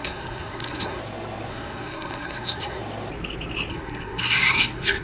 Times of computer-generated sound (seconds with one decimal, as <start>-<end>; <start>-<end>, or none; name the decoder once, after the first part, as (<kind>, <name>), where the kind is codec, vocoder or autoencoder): 0.0-1.0 (codec, SNAC); 1.5-2.8; 3.7-5.0